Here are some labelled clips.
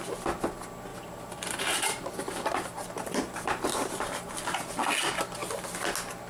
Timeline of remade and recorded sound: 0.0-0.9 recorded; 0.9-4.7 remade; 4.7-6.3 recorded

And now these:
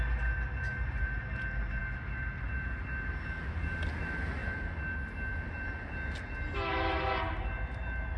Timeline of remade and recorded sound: 0.0-8.2 recorded

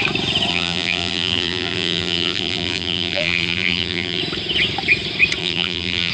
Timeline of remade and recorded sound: 0.0-0.5 recorded; 0.5-4.2 remade; 4.2-5.4 recorded; 5.4-6.1 remade